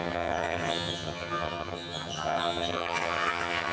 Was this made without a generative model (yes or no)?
no